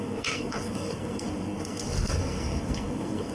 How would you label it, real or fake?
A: fake